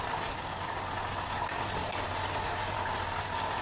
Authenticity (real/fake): real